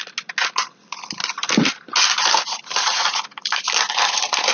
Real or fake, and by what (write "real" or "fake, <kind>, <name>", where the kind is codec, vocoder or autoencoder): real